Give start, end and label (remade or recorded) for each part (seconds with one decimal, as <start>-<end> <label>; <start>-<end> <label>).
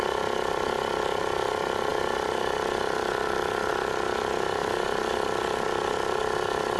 0.0-6.8 recorded